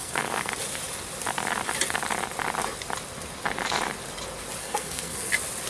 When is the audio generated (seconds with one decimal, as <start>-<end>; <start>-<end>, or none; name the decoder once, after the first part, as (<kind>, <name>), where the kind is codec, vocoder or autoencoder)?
0.0-0.5 (codec, SNAC); 4.6-5.3